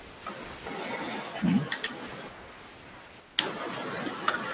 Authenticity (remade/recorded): recorded